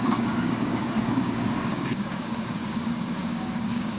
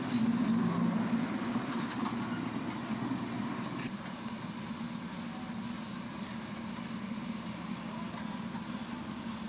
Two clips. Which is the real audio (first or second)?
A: second